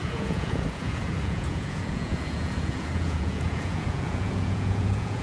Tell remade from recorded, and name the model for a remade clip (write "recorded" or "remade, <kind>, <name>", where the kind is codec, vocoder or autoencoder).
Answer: remade, vocoder, Vocos